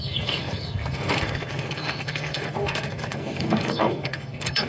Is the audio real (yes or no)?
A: no